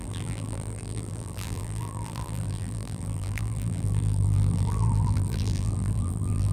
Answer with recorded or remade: remade